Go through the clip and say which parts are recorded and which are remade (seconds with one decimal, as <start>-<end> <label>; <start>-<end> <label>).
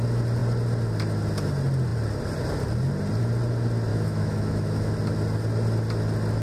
0.0-3.9 recorded; 3.9-4.9 remade; 4.9-6.4 recorded